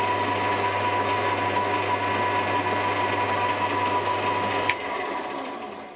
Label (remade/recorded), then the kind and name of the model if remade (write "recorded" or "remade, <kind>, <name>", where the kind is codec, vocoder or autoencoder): recorded